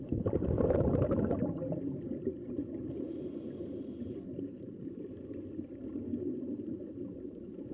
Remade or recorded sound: recorded